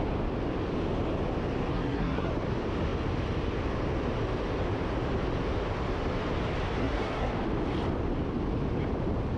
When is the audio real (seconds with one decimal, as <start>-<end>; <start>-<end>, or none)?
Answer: 0.0-1.7; 2.3-6.8; 7.3-9.4